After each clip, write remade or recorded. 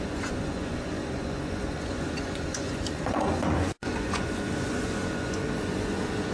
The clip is remade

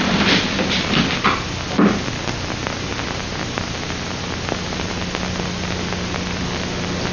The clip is recorded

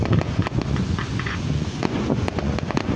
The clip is remade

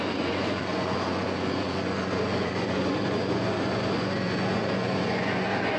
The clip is remade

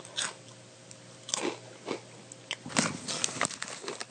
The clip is recorded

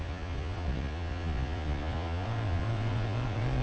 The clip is remade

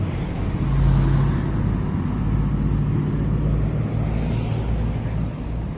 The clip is recorded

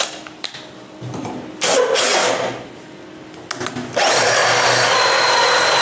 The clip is recorded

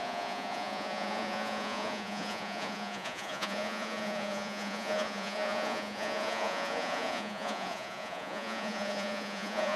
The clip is remade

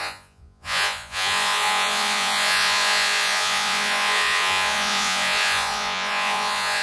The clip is remade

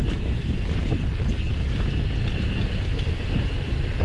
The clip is recorded